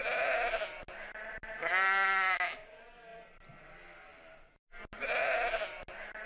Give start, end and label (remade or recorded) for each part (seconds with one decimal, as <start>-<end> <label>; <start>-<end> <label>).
0.0-6.3 recorded